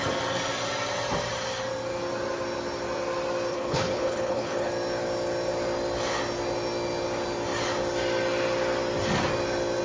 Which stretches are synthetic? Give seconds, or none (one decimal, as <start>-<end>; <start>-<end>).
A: 3.5-4.7